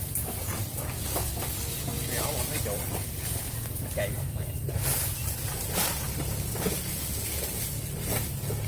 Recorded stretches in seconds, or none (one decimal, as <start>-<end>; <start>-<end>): 0.0-8.7